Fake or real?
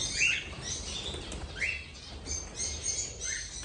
real